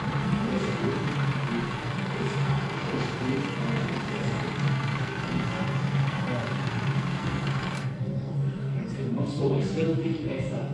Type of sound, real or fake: fake